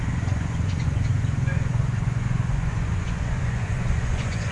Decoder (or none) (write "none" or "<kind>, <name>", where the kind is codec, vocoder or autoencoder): vocoder, Vocos